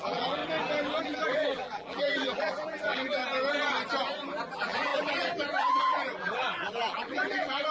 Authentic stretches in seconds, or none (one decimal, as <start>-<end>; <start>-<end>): 0.4-1.0; 3.2-4.5